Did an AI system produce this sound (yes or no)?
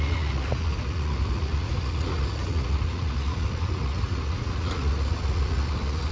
yes